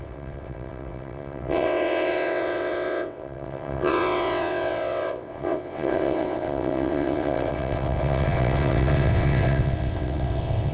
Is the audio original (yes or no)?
no